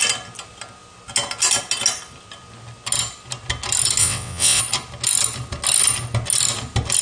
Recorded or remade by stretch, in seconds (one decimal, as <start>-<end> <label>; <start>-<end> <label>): 0.0-4.0 recorded; 4.0-4.6 remade; 4.6-7.0 recorded